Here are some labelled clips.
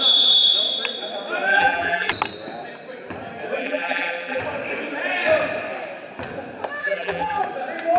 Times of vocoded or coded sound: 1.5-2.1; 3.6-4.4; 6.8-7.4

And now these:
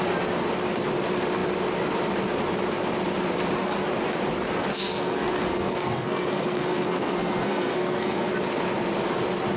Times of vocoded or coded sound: 4.7-8.3

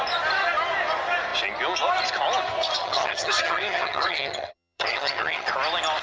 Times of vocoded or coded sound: 2.8-5.5

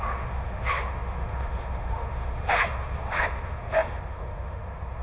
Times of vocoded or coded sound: 0.0-5.0

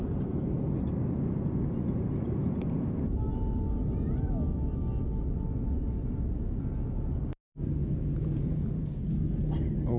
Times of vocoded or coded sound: 7.8-9.0

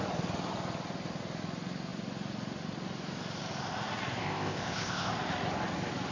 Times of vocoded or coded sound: 4.2-5.1

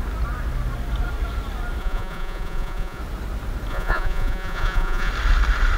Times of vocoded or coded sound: 1.8-3.0; 3.7-5.1